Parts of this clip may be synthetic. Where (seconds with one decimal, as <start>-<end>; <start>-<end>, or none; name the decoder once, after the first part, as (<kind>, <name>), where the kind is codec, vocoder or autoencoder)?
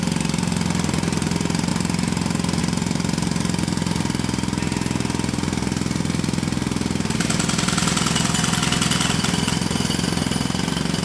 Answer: none